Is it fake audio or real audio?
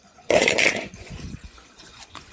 fake